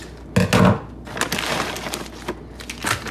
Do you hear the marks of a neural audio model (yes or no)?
no